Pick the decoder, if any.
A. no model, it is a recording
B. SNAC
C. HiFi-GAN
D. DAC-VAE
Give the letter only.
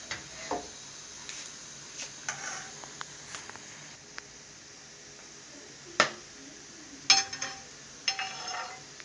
A